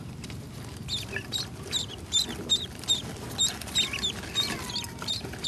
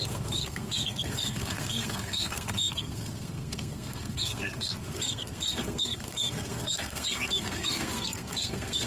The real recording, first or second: first